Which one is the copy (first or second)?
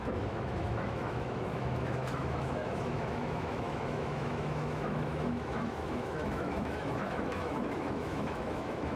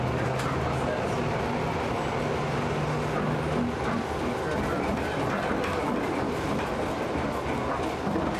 first